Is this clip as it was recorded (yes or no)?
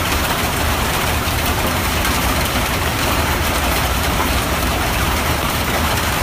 no